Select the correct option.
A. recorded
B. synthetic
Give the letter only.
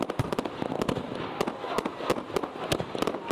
A